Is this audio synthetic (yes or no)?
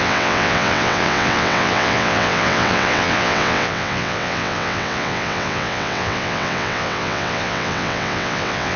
yes